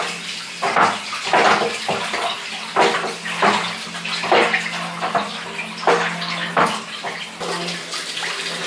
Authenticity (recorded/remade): recorded